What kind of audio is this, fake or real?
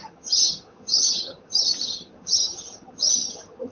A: fake